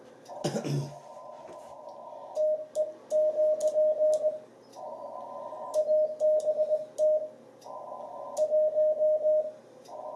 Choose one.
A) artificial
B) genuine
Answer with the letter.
B